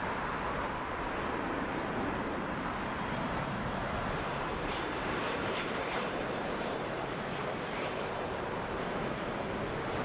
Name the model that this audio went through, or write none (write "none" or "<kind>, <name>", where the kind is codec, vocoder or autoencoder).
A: vocoder, BigVGAN v2